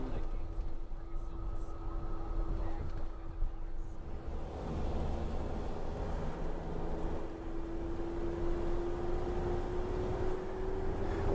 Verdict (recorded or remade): recorded